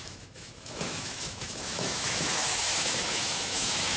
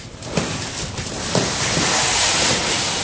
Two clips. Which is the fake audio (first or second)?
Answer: first